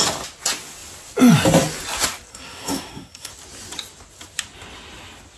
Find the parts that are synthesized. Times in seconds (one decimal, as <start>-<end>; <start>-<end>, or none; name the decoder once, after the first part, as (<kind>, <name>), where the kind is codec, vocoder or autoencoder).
2.3-3.3 (codec, SNAC)